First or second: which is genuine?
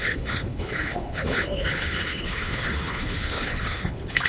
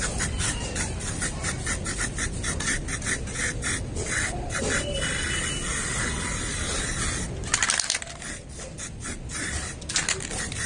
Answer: second